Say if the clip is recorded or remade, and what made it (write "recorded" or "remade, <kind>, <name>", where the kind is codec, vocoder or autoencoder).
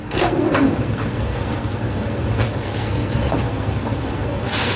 remade, codec, SNAC